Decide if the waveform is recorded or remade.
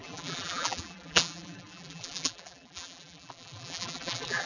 remade